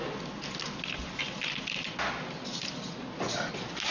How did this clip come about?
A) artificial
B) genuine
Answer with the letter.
B